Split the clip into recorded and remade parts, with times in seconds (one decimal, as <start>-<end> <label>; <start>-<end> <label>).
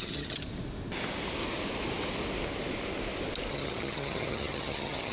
0.0-0.4 remade; 0.4-3.5 recorded; 3.5-5.1 remade